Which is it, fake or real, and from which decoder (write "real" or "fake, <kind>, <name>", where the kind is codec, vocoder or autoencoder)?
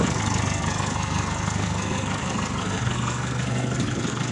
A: fake, codec, SNAC